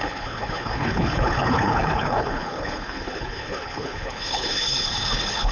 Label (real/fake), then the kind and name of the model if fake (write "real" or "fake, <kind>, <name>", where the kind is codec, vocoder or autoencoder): fake, codec, HILCodec